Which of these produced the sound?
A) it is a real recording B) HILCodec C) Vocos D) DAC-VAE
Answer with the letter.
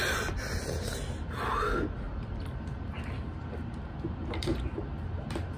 A